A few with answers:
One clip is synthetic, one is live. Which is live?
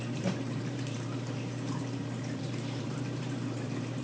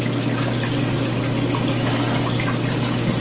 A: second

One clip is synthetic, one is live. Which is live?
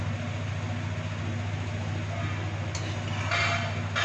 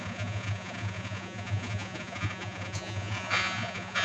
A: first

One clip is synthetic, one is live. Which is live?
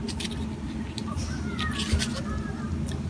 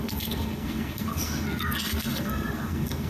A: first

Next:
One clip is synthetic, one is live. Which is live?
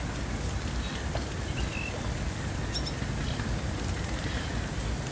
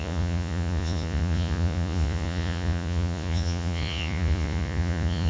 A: first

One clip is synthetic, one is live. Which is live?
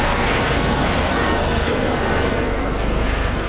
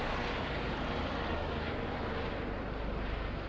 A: second